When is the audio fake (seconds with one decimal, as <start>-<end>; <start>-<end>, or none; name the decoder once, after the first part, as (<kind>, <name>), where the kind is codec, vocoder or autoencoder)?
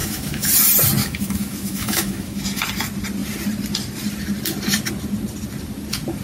0.0-0.5 (autoencoder, DAC-VAE); 1.0-2.6